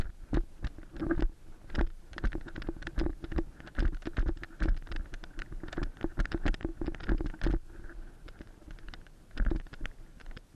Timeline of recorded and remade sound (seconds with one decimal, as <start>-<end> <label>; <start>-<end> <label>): 0.0-10.6 recorded